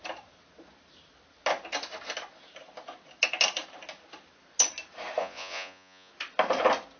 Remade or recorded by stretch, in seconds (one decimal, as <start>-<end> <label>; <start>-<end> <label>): 0.0-5.2 recorded; 5.2-6.1 remade; 6.1-7.0 recorded